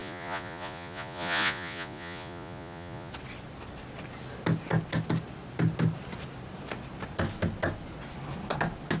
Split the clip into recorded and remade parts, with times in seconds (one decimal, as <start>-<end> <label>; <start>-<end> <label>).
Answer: 0.0-3.1 remade; 3.1-9.0 recorded